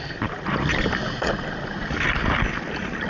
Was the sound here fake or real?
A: real